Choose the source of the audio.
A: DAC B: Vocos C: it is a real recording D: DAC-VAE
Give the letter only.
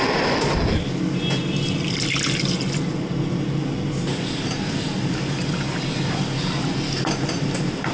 C